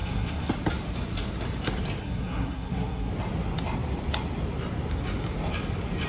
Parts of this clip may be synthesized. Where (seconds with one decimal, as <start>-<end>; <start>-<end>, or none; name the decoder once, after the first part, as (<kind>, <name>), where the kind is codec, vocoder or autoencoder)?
0.0-0.5 (codec, SNAC); 2.0-3.1

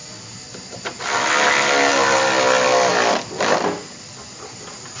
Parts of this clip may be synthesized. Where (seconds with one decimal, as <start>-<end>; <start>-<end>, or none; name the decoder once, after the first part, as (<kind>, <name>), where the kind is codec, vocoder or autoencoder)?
none

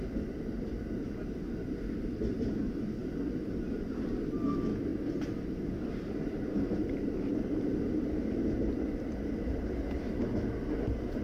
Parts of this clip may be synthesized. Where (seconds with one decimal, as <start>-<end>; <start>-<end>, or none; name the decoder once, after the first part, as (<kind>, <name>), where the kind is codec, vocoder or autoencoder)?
none

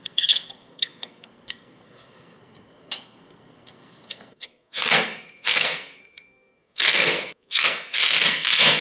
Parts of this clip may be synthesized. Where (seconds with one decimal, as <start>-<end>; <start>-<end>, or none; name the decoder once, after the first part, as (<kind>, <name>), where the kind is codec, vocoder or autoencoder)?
0.0-8.8 (codec, SNAC)

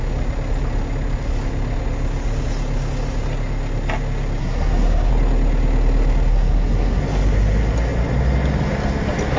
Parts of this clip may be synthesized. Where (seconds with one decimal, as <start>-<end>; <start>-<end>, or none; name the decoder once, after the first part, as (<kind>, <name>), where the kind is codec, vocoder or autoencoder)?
4.4-5.1 (codec, SNAC); 6.3-7.0

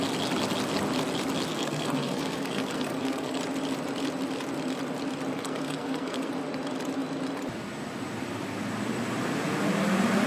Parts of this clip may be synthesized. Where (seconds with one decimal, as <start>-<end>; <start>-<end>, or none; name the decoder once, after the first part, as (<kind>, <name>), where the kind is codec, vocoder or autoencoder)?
1.5-3.4 (codec, SNAC); 5.3-6.3

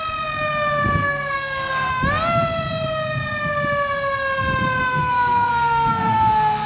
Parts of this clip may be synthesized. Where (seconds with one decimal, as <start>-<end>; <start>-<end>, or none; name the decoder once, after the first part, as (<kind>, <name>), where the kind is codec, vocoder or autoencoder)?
1.0-1.9 (codec, SNAC); 4.8-6.7

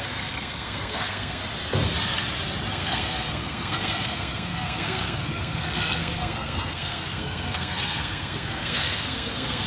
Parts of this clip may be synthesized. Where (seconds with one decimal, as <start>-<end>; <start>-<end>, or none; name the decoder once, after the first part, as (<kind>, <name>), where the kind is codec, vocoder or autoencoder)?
0.0-1.4 (codec, SNAC); 2.7-9.7